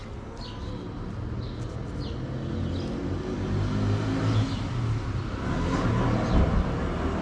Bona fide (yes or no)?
yes